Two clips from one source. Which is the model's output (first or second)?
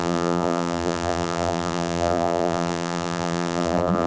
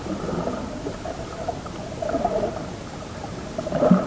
first